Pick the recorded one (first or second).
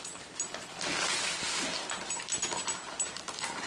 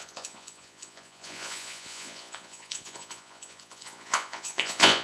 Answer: first